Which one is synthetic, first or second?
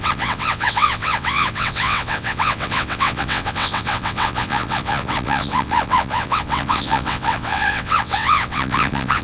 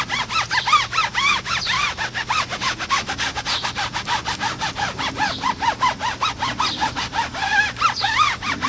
first